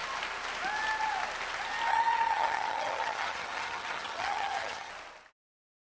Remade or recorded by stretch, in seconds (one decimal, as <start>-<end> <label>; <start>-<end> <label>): 0.0-1.9 recorded; 1.9-4.9 remade; 4.9-5.8 recorded